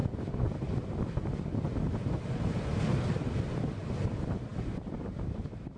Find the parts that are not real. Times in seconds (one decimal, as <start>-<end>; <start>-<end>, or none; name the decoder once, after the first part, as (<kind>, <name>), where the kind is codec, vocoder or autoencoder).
none